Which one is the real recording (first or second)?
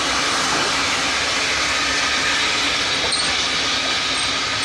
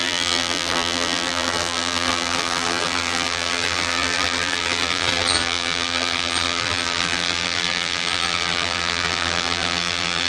first